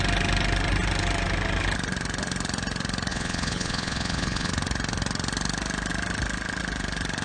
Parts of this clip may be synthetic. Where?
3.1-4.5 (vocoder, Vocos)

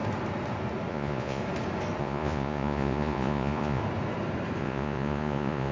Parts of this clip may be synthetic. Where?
0.9-1.4 (vocoder, Vocos); 2.0-3.8; 4.6-5.7

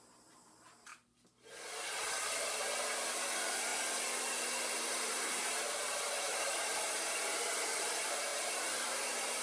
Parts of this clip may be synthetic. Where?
0.0-0.9 (vocoder, BigVGAN v2); 3.1-3.7; 4.7-9.4

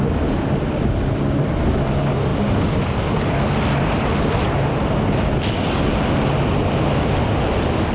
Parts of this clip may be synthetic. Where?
none

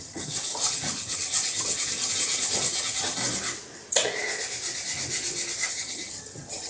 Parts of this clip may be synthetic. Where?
0.0-3.2 (vocoder, HiFi-GAN); 5.7-6.7

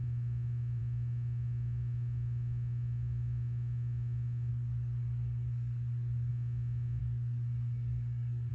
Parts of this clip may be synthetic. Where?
4.5-6.3 (codec, SNAC); 7.0-8.5

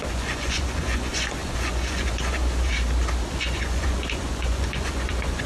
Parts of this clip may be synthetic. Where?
0.0-2.7 (vocoder, Vocos); 3.3-5.5